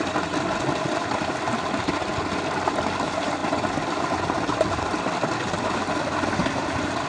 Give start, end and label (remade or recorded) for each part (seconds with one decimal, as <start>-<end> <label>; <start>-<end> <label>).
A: 0.0-7.1 recorded